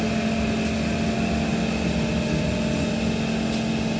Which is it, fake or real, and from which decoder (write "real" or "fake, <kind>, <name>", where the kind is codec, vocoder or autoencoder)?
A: real